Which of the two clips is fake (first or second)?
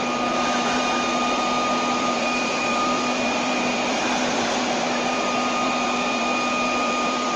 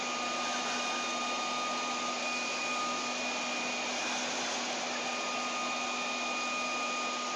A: first